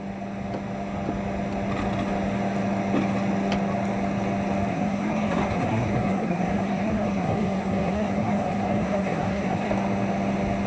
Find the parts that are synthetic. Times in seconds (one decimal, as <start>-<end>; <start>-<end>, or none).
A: 4.7-9.7